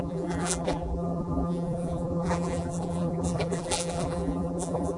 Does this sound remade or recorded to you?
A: remade